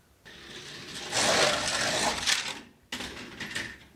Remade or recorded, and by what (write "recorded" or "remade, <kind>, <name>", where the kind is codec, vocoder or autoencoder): recorded